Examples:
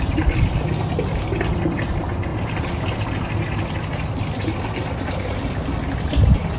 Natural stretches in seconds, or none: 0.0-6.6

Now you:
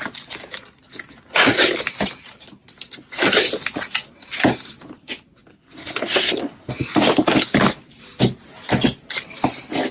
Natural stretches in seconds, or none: 0.0-5.5; 6.7-9.9

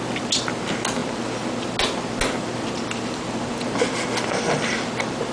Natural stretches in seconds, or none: 0.0-5.3

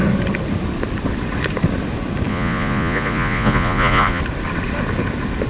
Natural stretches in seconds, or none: 0.0-2.3; 4.2-5.5

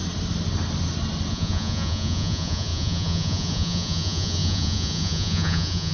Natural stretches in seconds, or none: 0.0-1.3